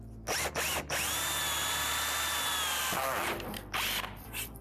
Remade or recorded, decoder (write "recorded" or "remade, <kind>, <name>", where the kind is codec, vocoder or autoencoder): recorded